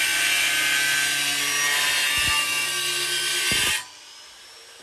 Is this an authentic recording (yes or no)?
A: yes